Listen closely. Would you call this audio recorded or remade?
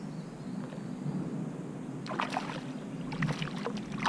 recorded